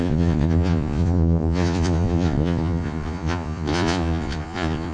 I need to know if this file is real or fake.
fake